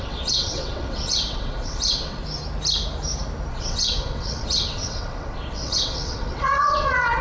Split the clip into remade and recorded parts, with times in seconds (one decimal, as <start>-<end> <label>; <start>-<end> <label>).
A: 0.0-2.2 remade; 2.2-3.5 recorded; 3.5-7.2 remade

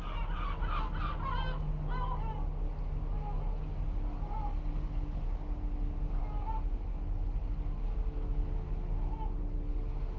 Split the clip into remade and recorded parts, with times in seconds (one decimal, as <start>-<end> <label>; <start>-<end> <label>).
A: 0.0-10.2 recorded

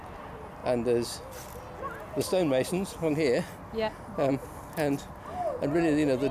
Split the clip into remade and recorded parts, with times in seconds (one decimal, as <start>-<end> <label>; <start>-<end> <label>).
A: 0.0-6.3 recorded

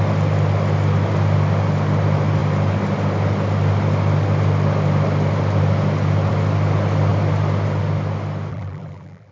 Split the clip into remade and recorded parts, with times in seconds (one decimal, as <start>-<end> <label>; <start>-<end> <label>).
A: 0.0-8.5 recorded; 8.5-9.3 remade

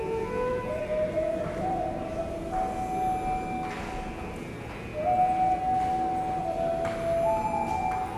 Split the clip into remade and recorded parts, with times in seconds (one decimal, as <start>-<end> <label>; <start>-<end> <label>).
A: 0.0-0.5 recorded; 0.5-2.2 remade; 2.2-8.2 recorded